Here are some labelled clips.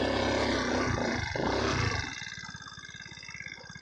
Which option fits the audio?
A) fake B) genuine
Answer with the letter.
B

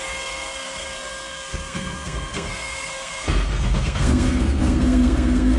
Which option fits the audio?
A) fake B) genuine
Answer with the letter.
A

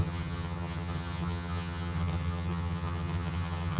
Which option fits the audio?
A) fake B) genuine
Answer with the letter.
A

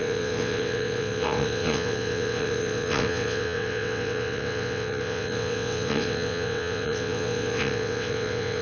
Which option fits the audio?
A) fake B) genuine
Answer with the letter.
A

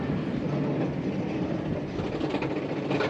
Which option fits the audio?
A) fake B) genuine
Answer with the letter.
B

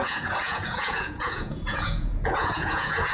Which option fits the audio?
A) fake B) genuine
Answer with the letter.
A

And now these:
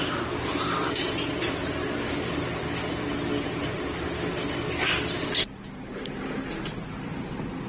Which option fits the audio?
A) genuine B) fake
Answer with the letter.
A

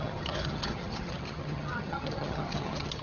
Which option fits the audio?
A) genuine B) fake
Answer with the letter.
B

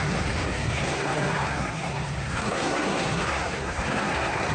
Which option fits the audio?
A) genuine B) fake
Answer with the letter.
B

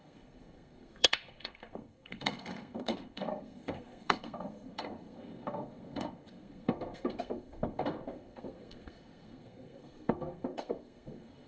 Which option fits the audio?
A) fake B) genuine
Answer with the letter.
A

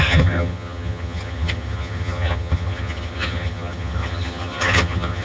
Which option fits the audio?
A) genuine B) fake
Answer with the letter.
B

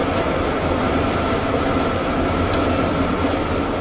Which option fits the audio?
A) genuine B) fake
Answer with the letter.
A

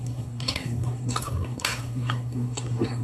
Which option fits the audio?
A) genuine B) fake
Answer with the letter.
B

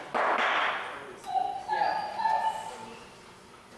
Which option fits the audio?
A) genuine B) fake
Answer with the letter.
A